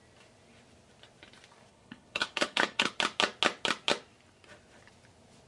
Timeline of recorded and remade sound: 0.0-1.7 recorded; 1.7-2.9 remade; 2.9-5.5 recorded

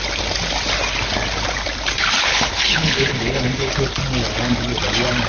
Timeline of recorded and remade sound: 0.0-2.3 recorded; 2.3-3.7 remade; 3.7-5.3 recorded

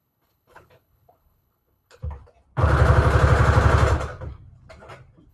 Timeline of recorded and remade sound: 0.0-2.0 remade; 2.0-5.3 recorded

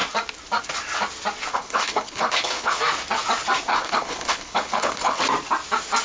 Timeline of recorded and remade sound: 0.0-1.5 recorded; 1.5-2.8 remade; 2.8-3.7 recorded; 3.7-5.2 remade; 5.2-6.0 recorded

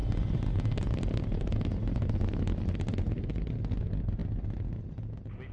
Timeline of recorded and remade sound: 0.0-5.5 recorded

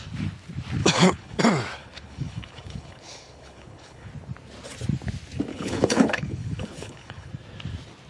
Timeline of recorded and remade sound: 0.0-0.8 recorded; 0.8-1.4 remade; 1.4-1.8 recorded; 1.8-4.1 remade; 4.1-5.5 recorded; 5.5-7.3 remade; 7.3-8.1 recorded

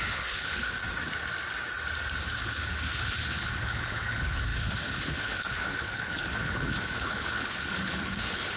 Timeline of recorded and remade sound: 0.0-0.8 remade; 0.8-2.2 recorded; 2.2-8.6 remade

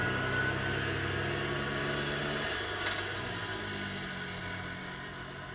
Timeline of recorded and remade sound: 0.0-5.5 recorded